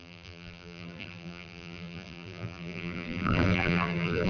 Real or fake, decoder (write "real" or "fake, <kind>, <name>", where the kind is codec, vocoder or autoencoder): fake, vocoder, BigVGAN v2